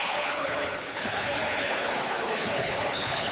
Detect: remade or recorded remade